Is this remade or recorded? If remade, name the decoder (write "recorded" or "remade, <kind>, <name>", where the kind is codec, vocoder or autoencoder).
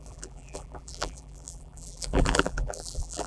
remade, vocoder, BigVGAN v2